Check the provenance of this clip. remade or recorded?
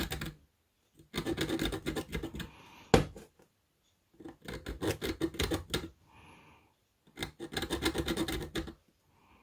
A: recorded